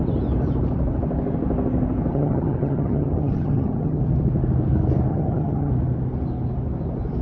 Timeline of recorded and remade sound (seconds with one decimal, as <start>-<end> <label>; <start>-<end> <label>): 0.0-2.1 recorded; 2.1-4.0 remade; 4.0-5.1 recorded; 5.1-5.7 remade; 5.7-7.2 recorded